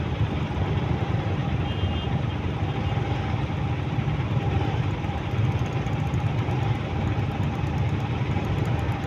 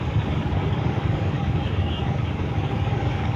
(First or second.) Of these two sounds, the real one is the first